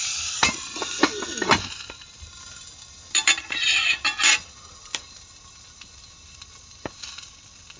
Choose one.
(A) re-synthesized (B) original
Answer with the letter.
B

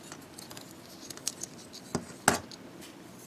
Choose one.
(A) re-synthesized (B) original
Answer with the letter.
B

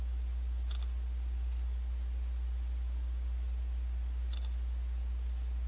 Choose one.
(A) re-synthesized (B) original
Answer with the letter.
B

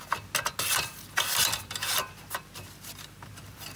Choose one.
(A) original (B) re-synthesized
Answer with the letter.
A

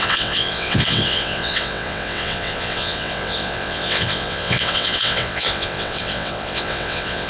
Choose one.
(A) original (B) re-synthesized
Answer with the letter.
B